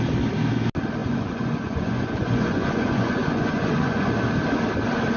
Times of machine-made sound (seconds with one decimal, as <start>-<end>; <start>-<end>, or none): 1.0-4.1